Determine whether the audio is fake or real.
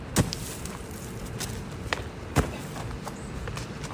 real